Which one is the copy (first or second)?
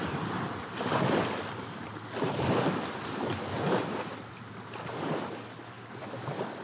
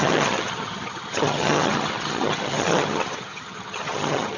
second